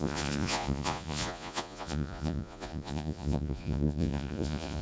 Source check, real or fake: fake